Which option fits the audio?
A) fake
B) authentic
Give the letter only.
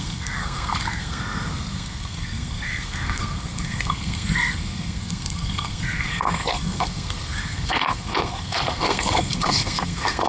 A